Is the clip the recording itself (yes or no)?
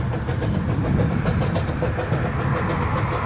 yes